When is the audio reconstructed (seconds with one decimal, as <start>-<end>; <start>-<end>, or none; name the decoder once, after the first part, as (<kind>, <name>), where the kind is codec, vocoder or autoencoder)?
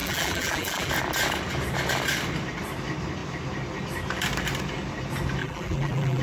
0.0-0.9 (vocoder, BigVGAN v2); 5.4-6.2